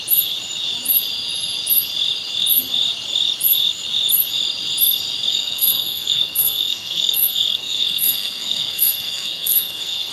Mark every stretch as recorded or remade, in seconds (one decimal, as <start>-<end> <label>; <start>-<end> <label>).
0.0-5.3 recorded; 5.3-10.1 remade